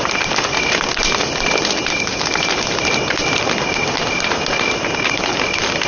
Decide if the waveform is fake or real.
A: real